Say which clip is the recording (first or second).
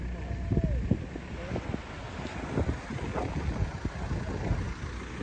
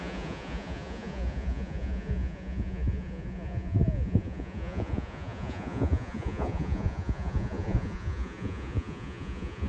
first